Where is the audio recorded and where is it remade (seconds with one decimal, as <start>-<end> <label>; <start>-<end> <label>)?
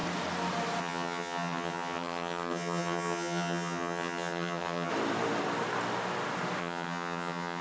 0.0-0.8 recorded; 0.8-4.9 remade; 4.9-6.6 recorded; 6.6-7.6 remade